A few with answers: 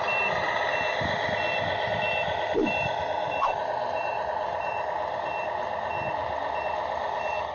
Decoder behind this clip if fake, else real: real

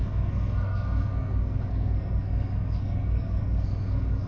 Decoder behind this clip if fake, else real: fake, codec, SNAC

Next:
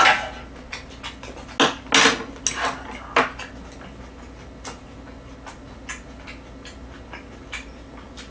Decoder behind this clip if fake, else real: real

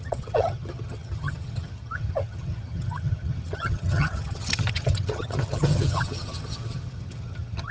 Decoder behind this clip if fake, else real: fake, vocoder, HiFi-GAN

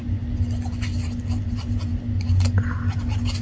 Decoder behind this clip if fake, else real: real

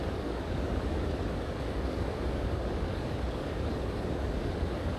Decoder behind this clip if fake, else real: fake, codec, DAC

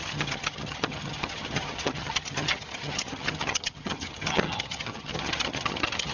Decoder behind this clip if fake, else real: fake, vocoder, HiFi-GAN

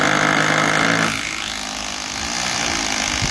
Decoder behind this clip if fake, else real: real